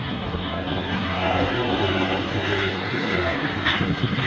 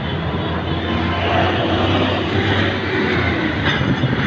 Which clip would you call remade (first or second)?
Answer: first